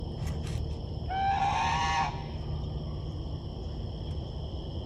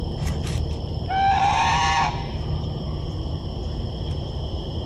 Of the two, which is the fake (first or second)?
second